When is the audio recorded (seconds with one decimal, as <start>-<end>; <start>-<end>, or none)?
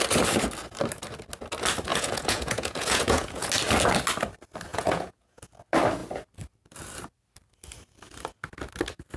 0.0-1.9; 3.5-4.7; 5.4-9.2